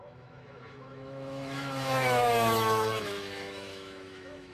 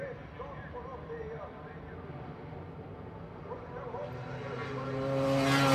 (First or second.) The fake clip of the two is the first